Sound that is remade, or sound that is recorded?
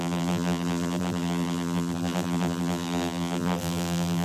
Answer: remade